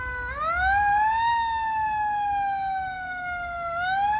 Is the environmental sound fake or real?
real